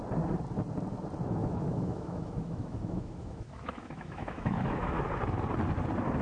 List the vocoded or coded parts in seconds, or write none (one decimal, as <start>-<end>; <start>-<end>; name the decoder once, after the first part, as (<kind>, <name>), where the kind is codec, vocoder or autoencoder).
1.4-5.1 (autoencoder, DAC-VAE)